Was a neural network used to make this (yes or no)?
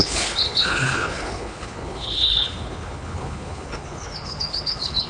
yes